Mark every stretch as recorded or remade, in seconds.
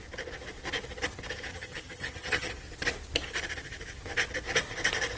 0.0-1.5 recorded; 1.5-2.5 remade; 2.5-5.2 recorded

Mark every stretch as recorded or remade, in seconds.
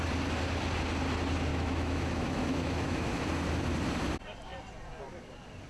0.0-1.5 recorded; 1.5-3.1 remade; 3.1-5.7 recorded